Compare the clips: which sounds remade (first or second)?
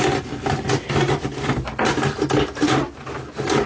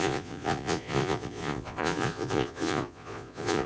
second